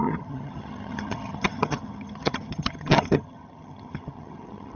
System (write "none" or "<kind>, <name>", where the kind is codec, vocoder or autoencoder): vocoder, HiFi-GAN